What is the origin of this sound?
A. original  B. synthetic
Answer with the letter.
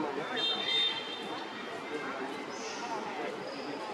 A